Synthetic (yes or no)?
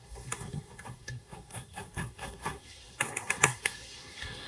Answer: yes